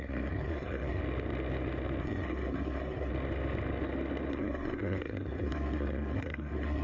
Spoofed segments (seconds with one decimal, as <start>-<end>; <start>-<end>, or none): 0.0-1.0; 2.0-3.1; 4.3-6.8